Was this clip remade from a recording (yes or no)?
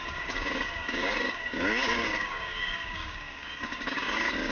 yes